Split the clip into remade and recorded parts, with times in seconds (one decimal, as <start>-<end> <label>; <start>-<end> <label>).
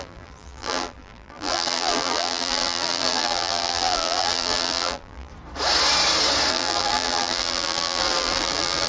0.0-5.3 remade; 5.3-6.5 recorded; 6.5-8.9 remade